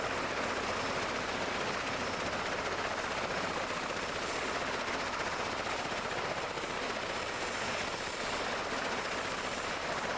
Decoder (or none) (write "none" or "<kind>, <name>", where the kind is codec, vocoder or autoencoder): none